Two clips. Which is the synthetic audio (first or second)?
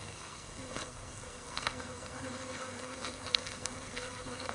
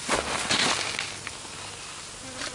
first